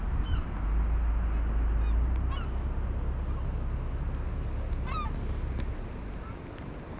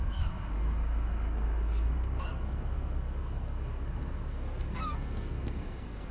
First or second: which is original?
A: first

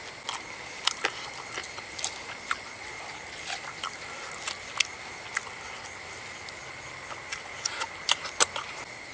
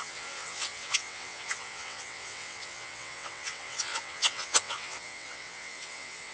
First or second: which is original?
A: first